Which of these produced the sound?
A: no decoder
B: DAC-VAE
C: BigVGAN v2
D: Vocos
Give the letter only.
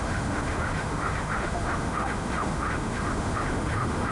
B